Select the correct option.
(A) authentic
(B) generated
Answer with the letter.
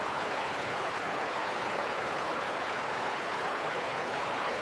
B